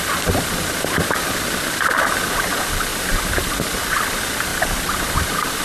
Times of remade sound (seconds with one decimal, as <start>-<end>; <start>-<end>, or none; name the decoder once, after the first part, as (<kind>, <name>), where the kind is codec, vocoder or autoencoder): 2.9-3.4 (vocoder, BigVGAN v2); 4.5-5.6